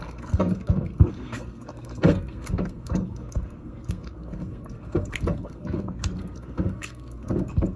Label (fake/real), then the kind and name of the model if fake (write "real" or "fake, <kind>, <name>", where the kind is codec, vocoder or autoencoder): fake, codec, SNAC